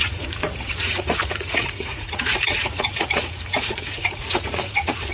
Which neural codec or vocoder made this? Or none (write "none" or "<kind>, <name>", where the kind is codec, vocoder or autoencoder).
vocoder, Vocos